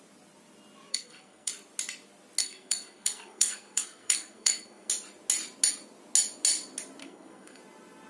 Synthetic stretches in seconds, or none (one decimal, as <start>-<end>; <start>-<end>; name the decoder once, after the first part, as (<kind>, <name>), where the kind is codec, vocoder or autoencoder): 0.9-1.5 (codec, SNAC); 2.4-4.9; 7.0-7.6